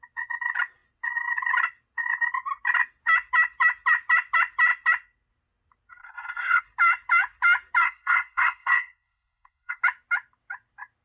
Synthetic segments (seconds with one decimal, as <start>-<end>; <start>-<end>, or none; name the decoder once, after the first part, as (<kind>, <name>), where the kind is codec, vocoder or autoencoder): 6.0-6.6 (codec, SNAC); 7.8-9.8